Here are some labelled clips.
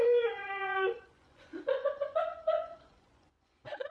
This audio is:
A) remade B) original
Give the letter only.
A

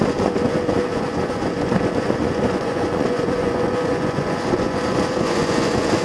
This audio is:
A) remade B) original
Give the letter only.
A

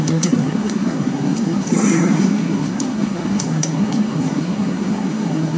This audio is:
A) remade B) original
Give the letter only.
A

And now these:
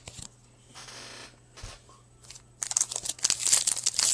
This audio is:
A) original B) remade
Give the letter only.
A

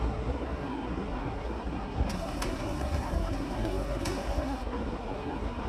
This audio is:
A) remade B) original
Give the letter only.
A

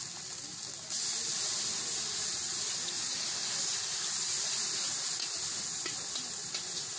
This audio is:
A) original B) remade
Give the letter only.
A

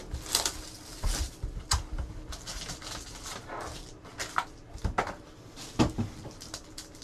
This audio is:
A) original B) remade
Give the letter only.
A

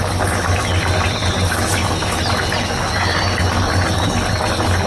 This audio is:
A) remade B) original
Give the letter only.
B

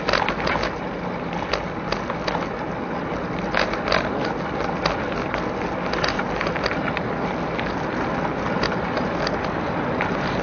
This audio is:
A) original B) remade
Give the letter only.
A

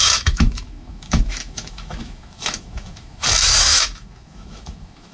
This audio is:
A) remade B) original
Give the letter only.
A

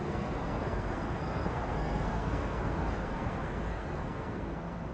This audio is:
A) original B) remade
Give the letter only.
B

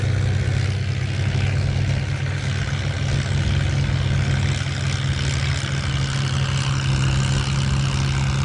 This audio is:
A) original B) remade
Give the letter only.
A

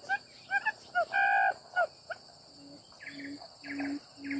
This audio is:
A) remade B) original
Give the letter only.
B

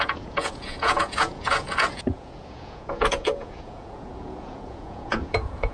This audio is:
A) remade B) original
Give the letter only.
A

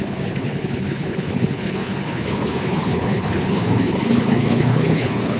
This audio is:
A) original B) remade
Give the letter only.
B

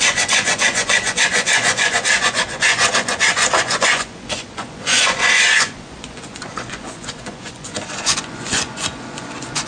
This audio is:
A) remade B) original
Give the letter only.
A